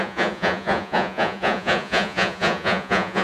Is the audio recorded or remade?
remade